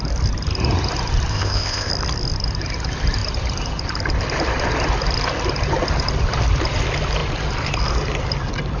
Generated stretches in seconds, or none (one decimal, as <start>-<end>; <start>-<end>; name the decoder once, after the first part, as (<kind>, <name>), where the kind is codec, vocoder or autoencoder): 1.3-1.9 (codec, ZipCodec)